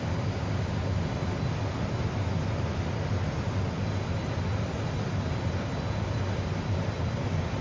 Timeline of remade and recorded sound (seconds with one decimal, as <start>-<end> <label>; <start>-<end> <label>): 0.0-7.6 recorded